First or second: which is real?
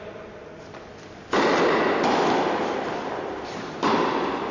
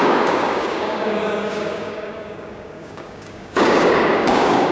first